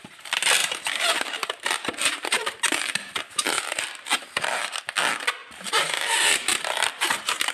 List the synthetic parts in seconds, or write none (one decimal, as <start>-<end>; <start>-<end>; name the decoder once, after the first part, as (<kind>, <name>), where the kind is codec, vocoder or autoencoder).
0.6-4.8 (vocoder, BigVGAN v2); 5.4-7.5